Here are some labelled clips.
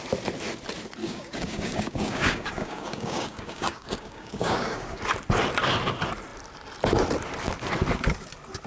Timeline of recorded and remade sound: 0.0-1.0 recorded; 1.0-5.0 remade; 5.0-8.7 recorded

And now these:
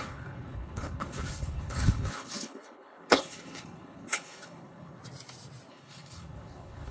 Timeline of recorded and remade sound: 0.0-5.0 remade; 5.0-5.7 recorded; 5.7-6.9 remade

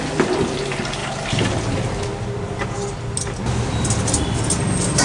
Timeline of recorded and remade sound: 0.0-5.0 recorded

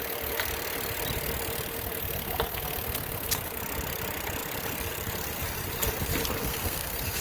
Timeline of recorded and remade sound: 0.0-6.4 recorded; 6.4-7.2 remade

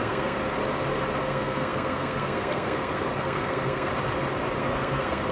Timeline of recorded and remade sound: 0.0-0.4 remade; 0.4-1.2 recorded; 1.2-3.9 remade; 3.9-4.6 recorded; 4.6-5.3 remade

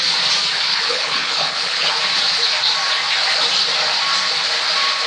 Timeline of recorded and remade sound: 0.0-0.7 recorded; 0.7-1.9 remade; 1.9-5.1 recorded